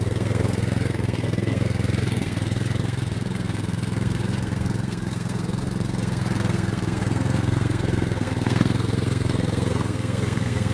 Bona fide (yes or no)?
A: no